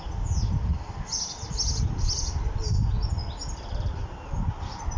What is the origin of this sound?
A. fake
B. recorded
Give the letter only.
B